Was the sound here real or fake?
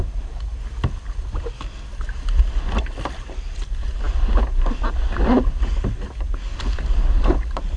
real